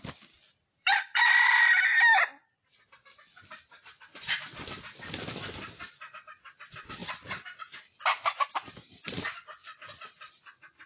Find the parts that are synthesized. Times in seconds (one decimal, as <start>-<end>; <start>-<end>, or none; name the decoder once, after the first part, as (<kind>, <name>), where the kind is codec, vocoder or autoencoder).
0.0-8.1 (vocoder, BigVGAN v2); 10.3-10.9